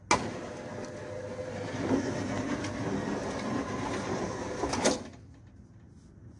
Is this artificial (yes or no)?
no